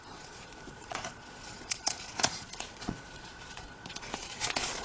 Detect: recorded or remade remade